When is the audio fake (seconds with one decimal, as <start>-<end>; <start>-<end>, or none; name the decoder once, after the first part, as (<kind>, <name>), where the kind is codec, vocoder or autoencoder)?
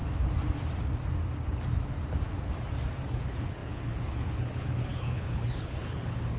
3.1-6.4 (codec, HILCodec)